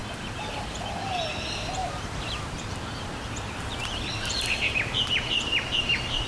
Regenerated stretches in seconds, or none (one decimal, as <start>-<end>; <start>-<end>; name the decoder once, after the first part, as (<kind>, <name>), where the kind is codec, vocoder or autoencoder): 0.5-6.3 (vocoder, BigVGAN v2)